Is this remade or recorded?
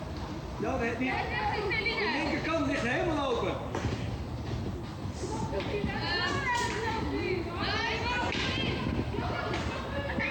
recorded